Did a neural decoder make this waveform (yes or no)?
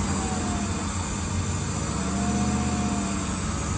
no